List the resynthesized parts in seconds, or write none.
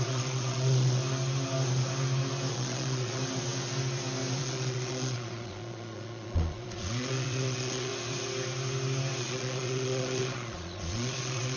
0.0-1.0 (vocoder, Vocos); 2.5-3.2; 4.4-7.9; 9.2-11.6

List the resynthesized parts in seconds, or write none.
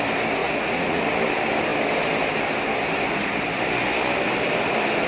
0.4-1.0 (vocoder, Vocos)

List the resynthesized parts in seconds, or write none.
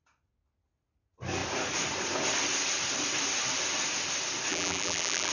4.5-5.3 (vocoder, BigVGAN v2)